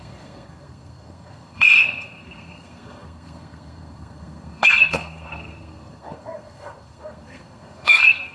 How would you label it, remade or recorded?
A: remade